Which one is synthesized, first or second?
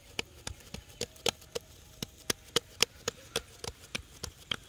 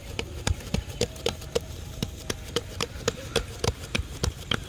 second